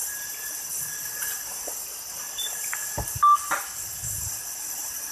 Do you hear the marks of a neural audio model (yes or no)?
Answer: no